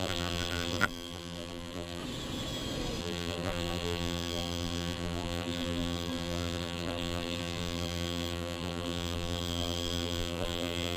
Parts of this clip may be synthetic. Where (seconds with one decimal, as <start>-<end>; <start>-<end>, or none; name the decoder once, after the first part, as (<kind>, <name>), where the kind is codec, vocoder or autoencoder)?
0.0-2.0 (vocoder, BigVGAN v2); 3.0-11.0